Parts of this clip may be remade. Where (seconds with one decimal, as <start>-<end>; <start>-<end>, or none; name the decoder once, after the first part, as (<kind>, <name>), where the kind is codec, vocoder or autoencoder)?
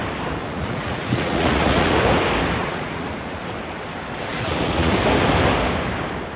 0.4-2.0 (vocoder, Vocos); 2.6-3.4; 4.3-4.9